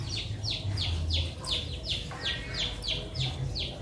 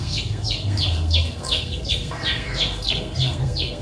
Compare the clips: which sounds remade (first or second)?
second